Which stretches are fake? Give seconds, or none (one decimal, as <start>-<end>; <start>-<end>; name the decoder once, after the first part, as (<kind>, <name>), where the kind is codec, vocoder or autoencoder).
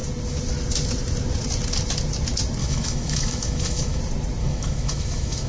2.6-4.0 (autoencoder, DAC-VAE); 4.4-5.5